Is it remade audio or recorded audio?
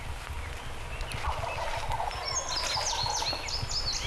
recorded